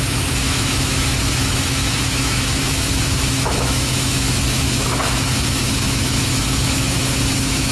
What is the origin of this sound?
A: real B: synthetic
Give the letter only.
B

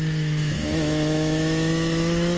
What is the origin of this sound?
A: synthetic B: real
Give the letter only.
A